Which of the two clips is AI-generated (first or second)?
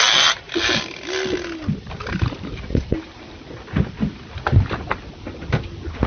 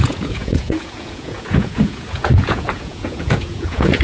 second